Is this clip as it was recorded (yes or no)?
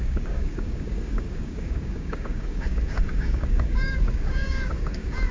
no